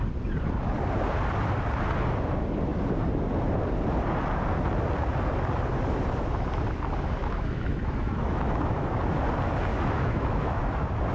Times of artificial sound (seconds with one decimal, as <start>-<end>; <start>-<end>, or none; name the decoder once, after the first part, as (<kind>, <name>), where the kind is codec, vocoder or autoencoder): 7.2-9.0 (autoencoder, DAC-VAE); 9.7-10.6